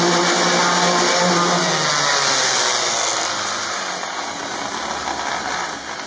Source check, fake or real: real